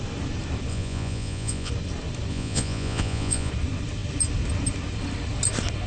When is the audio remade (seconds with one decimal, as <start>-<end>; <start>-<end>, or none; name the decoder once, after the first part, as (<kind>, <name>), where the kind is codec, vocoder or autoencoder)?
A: 0.7-1.7 (vocoder, Vocos); 2.3-3.5